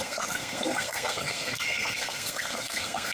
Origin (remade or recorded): remade